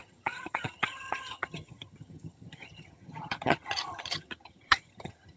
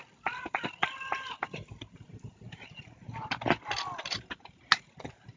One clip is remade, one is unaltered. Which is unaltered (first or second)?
second